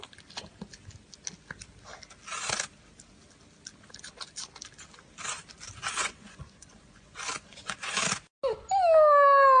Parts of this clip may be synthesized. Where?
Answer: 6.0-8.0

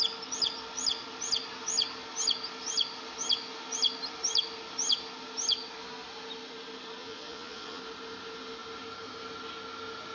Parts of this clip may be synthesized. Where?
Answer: 7.0-7.8

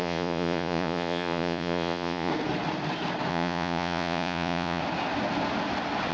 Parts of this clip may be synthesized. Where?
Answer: 0.0-2.3; 3.3-4.8